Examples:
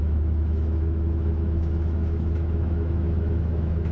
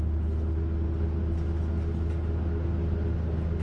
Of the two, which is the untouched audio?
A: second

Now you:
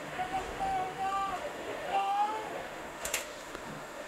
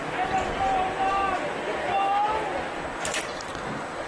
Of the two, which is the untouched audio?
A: second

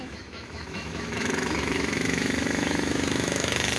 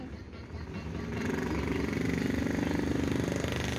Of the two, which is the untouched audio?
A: second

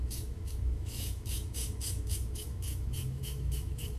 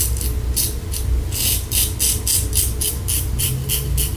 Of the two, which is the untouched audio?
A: second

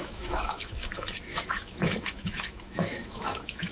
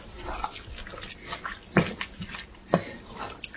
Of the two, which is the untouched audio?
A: second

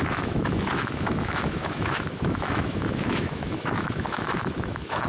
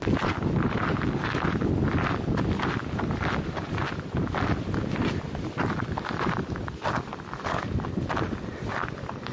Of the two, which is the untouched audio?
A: second